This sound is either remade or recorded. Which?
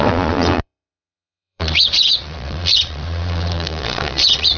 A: remade